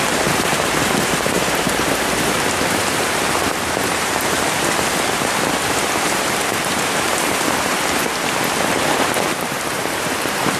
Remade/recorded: remade